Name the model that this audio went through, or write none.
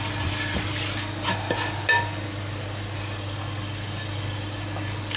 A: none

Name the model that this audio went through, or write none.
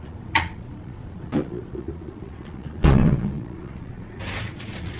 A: vocoder, Vocos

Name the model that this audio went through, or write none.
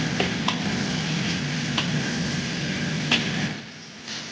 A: none